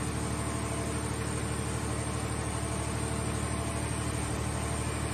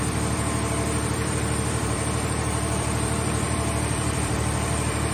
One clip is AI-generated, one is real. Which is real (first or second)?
first